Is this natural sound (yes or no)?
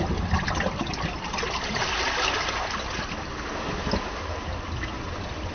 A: yes